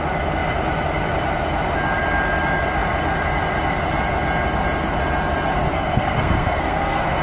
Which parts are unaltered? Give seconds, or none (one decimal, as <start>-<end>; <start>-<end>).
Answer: 0.0-5.7